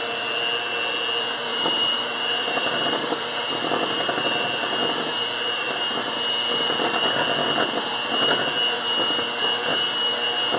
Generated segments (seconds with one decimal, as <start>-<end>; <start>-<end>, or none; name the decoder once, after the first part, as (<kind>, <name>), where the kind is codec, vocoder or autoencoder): 1.5-3.5 (vocoder, BigVGAN v2)

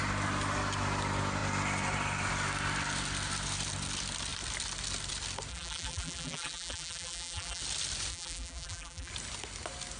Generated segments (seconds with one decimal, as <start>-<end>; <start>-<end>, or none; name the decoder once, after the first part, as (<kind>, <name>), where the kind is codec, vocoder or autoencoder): 5.5-7.6 (vocoder, BigVGAN v2); 8.1-9.1

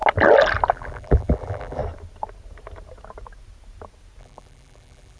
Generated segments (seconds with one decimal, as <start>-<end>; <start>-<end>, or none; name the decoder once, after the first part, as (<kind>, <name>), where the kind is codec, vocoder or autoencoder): 0.7-1.8 (vocoder, BigVGAN v2); 4.2-5.2

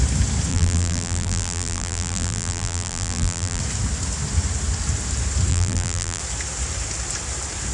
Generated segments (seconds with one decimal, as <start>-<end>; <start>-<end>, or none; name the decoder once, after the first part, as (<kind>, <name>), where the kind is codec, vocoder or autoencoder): 0.5-3.6 (vocoder, BigVGAN v2); 5.5-6.2

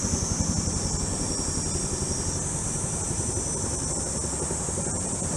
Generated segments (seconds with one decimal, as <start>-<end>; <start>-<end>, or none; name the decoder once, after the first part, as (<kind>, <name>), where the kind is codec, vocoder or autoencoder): 2.6-3.9 (vocoder, BigVGAN v2)

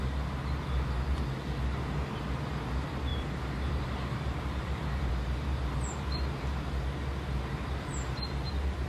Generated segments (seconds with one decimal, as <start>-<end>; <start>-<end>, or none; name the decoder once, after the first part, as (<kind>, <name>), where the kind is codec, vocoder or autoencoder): 3.1-5.1 (vocoder, BigVGAN v2)

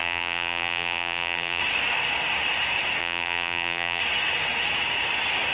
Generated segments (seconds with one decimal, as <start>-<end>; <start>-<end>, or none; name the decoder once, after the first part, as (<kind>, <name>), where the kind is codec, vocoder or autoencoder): 0.0-1.6 (vocoder, BigVGAN v2); 3.0-4.0

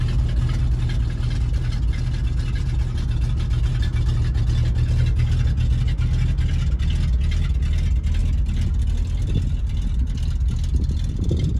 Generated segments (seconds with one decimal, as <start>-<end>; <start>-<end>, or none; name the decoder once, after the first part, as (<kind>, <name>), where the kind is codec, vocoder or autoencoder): 8.2-11.6 (vocoder, BigVGAN v2)